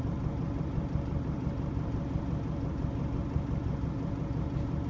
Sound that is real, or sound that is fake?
fake